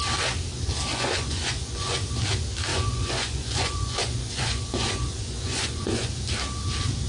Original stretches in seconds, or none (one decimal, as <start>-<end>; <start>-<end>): 0.0-0.9; 2.1-2.7; 6.1-7.1